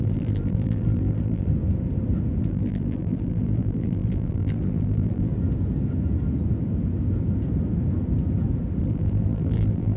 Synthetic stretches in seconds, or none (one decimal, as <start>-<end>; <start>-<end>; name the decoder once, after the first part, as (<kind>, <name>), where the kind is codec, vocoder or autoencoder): 0.0-1.5 (vocoder, BigVGAN v2); 2.4-5.3; 8.8-10.0